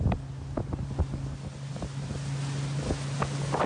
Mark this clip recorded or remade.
recorded